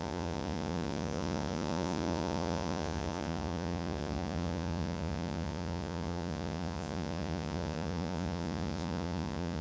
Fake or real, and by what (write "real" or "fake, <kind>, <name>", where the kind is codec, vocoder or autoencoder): fake, vocoder, Vocos